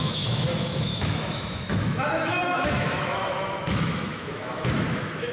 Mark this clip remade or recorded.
remade